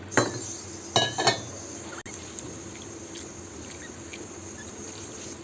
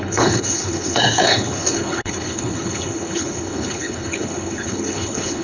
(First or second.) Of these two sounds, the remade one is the second